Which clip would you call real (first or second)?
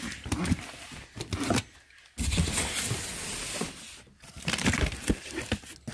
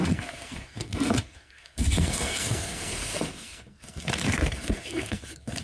first